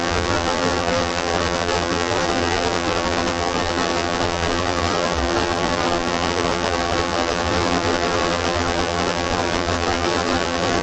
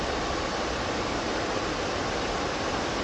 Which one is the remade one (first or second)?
first